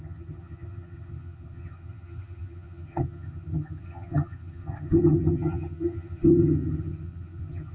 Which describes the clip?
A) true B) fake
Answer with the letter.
B